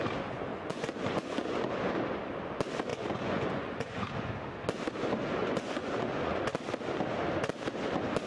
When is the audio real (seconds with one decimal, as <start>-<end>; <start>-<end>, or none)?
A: 0.0-0.5; 1.7-2.9; 4.3-5.4; 6.4-8.3